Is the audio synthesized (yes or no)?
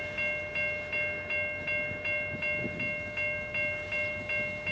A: no